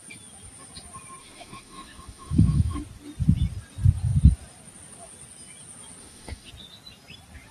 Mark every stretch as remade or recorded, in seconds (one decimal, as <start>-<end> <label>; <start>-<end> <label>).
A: 0.0-1.2 recorded; 1.2-2.8 remade; 2.8-6.0 recorded; 6.0-6.5 remade; 6.5-7.5 recorded